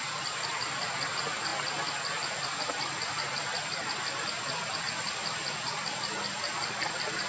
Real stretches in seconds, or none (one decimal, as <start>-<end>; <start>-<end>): 0.0-7.3